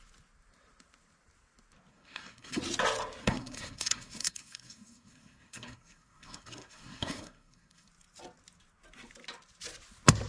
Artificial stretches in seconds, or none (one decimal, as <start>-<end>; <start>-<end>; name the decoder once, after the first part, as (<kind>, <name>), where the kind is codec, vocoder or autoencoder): 1.9-2.6 (codec, SNAC); 3.2-7.9